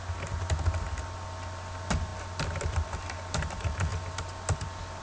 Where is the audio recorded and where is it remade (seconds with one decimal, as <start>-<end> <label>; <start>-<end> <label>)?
0.0-5.0 recorded